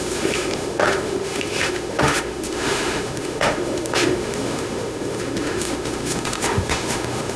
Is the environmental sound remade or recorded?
remade